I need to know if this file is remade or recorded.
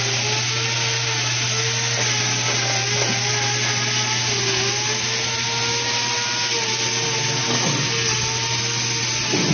recorded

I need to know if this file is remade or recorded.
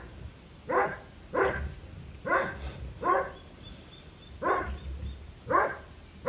recorded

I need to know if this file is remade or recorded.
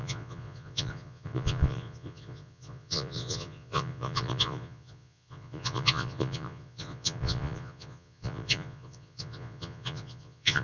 remade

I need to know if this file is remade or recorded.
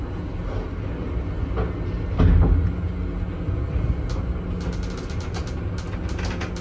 recorded